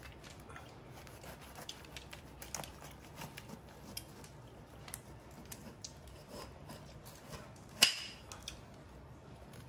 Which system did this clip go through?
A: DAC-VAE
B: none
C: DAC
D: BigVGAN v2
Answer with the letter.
B